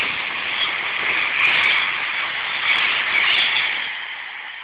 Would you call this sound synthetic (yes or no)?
no